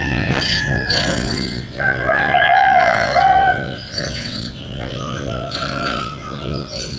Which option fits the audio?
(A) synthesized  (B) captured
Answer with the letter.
A